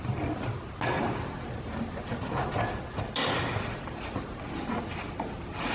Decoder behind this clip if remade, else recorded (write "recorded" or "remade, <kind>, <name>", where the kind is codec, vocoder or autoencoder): recorded